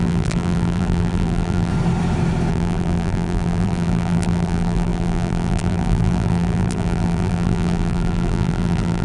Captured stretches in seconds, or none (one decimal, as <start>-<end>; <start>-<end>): 1.7-2.5